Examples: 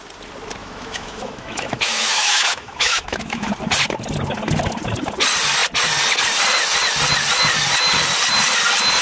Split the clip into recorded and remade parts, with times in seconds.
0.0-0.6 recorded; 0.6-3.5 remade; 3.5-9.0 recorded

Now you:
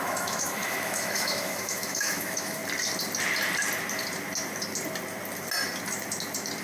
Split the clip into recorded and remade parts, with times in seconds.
0.0-2.6 remade; 2.6-6.6 recorded